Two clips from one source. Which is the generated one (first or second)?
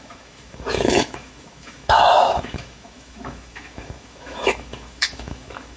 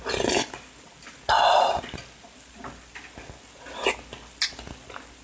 first